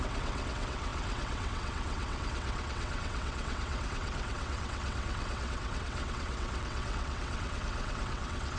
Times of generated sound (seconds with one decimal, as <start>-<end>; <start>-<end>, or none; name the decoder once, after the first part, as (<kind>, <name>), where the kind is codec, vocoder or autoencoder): 0.0-8.6 (vocoder, WaveNeXt)